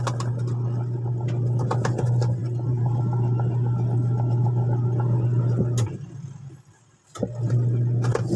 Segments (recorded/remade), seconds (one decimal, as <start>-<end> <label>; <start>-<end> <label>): 0.0-8.4 recorded